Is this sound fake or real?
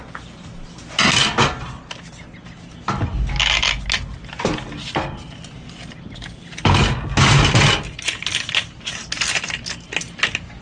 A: real